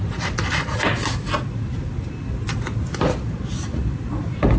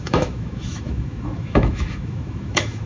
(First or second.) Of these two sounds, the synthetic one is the second